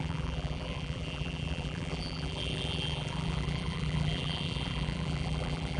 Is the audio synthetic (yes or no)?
yes